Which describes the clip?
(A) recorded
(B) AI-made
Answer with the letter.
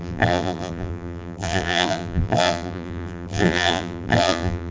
B